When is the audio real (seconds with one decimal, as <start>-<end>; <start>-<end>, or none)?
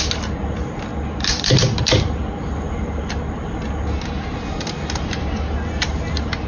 0.0-6.5